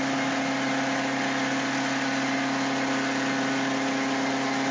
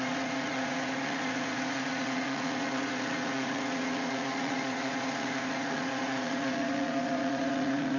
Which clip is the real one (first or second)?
first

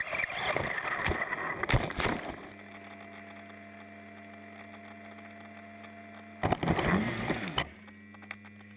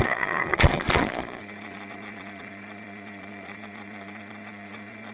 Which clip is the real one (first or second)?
first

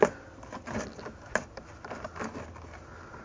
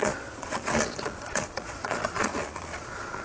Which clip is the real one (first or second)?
first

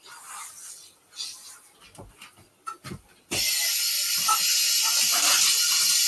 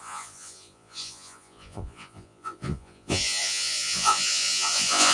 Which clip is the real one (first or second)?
first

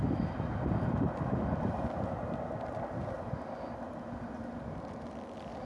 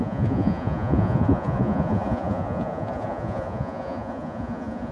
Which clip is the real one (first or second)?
first